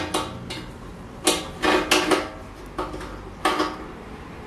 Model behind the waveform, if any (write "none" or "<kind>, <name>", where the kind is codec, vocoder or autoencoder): none